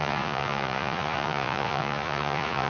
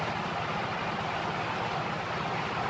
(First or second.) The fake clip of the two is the first